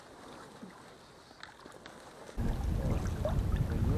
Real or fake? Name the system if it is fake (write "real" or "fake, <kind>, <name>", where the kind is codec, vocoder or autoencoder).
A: real